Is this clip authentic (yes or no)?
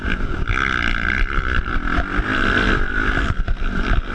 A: yes